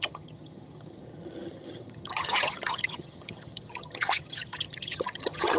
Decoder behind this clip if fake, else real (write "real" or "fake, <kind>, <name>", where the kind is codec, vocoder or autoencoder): fake, vocoder, HiFi-GAN